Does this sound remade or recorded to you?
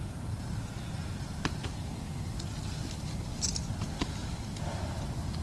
recorded